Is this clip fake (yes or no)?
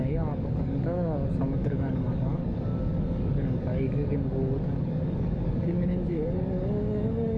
yes